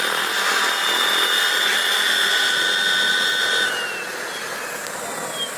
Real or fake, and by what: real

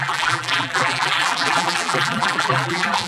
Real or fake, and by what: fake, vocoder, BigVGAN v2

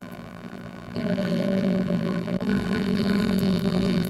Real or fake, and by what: fake, vocoder, BigVGAN v2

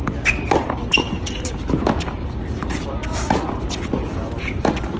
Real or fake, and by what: real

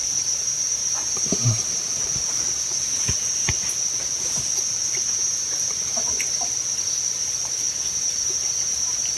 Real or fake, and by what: fake, vocoder, BigVGAN v2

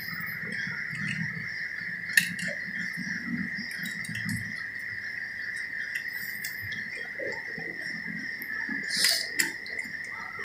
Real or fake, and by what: real